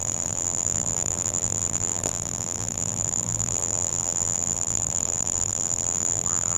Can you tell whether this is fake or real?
fake